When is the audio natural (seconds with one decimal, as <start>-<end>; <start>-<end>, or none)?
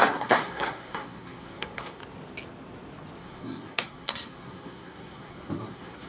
2.0-3.2